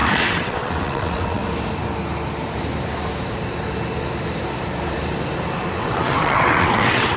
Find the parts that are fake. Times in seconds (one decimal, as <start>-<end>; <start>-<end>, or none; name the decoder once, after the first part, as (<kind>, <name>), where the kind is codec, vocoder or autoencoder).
0.0-1.4 (vocoder, WaveNeXt); 5.7-7.2